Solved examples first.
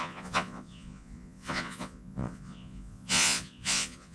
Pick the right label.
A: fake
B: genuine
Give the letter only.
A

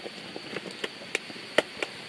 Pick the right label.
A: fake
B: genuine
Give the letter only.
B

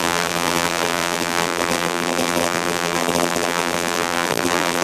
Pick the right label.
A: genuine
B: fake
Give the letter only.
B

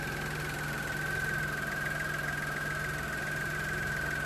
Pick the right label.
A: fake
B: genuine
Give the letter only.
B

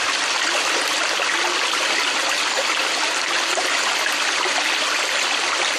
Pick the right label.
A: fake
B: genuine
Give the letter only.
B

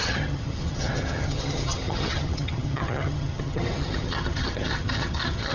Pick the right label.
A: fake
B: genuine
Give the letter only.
A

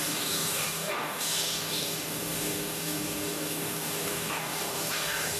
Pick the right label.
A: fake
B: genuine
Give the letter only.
A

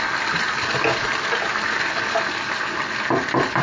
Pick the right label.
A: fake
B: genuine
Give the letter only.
B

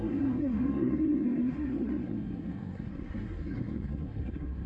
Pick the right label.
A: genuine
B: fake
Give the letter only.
B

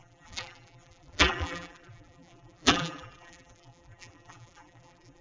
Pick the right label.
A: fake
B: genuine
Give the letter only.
A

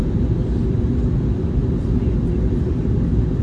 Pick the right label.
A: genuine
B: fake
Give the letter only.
A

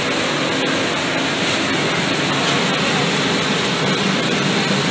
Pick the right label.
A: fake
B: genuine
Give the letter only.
B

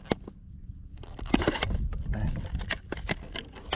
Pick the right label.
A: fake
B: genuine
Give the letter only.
B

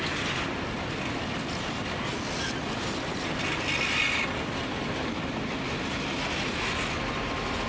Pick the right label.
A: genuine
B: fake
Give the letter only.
A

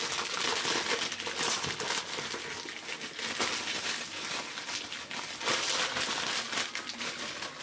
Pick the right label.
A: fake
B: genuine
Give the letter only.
B